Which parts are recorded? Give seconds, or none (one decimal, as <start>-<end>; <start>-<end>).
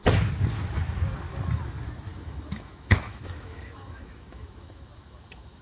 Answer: 0.0-2.1